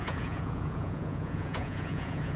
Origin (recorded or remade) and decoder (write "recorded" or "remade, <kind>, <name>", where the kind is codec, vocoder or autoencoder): remade, vocoder, Vocos